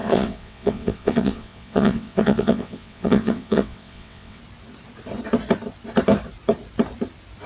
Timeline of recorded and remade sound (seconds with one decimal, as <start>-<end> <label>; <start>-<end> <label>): 0.0-4.4 remade; 4.4-7.5 recorded